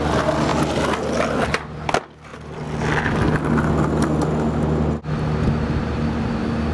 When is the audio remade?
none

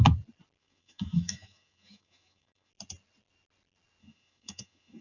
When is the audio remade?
0.6-2.7 (autoencoder, DAC-VAE); 4.0-5.0

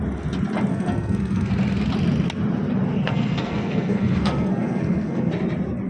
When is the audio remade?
0.7-1.5 (codec, SNAC); 3.0-5.3

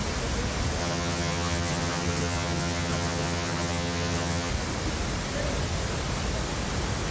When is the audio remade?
0.8-4.5 (vocoder, HiFi-GAN)

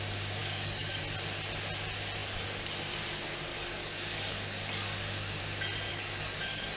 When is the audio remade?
0.4-1.0 (codec, DAC); 3.5-5.4; 5.9-6.8

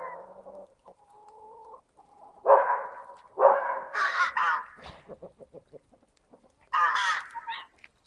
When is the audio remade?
3.5-4.2 (autoencoder, DAC-VAE)